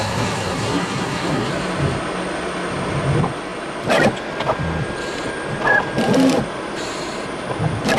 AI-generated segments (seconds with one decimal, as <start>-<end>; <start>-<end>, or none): 0.0-1.5